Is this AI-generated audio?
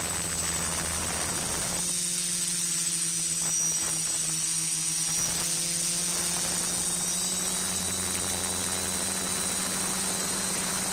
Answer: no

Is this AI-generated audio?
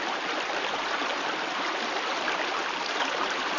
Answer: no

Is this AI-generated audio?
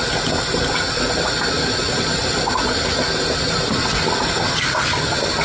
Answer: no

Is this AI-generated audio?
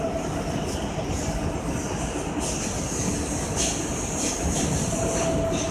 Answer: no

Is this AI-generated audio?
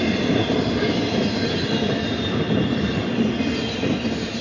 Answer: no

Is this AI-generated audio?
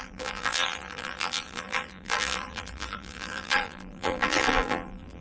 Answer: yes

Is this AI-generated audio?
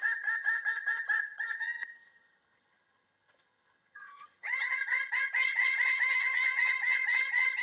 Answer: yes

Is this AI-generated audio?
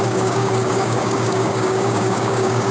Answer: yes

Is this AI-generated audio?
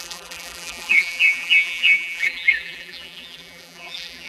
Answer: yes